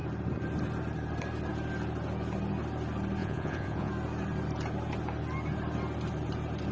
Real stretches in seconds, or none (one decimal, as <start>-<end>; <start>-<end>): 0.0-3.2; 3.9-6.7